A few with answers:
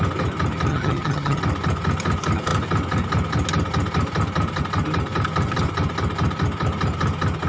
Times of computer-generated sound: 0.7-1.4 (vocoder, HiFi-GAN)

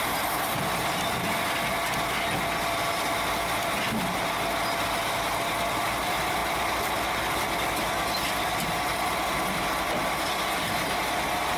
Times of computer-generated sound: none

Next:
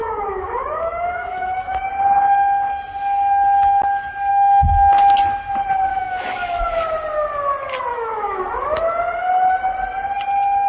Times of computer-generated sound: 0.0-1.9 (autoencoder, DAC-VAE); 4.3-5.0; 5.9-6.8; 7.9-8.4